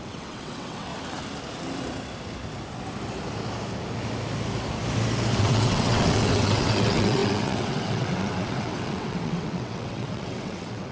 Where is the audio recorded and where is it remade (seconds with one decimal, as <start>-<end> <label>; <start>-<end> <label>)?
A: 0.0-0.9 remade; 0.9-5.4 recorded; 5.4-10.9 remade